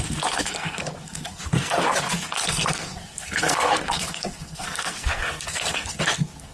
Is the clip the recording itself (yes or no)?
no